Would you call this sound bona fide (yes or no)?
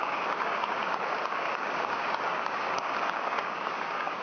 no